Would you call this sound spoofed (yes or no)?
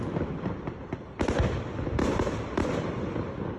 no